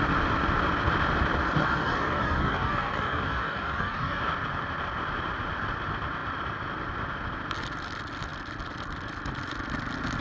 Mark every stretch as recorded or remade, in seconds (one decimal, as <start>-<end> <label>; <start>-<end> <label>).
0.0-1.6 recorded; 1.6-4.2 remade; 4.2-10.2 recorded